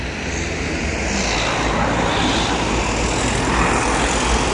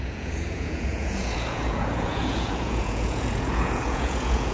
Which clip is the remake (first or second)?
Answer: second